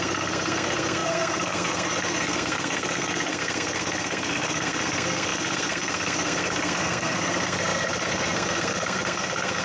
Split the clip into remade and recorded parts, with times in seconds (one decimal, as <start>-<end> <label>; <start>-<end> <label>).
0.0-9.6 remade